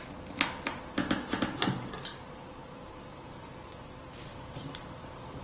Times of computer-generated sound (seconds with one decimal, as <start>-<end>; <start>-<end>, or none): 2.1-4.2